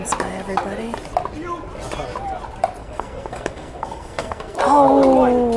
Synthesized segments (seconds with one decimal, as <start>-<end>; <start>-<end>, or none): 2.8-4.6